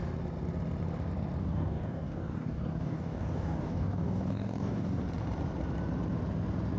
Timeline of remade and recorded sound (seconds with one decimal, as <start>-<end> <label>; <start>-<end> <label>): 0.0-1.4 recorded; 1.4-5.0 remade; 5.0-6.8 recorded